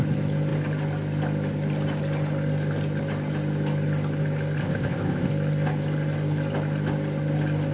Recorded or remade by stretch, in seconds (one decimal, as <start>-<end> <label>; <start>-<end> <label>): 0.0-4.6 recorded; 4.6-5.3 remade; 5.3-7.7 recorded